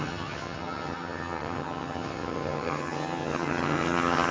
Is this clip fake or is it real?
fake